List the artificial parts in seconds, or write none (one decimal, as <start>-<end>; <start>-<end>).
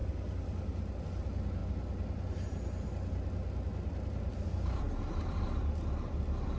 0.0-1.0; 4.5-5.6